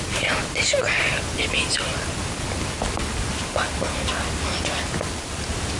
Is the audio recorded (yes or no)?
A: yes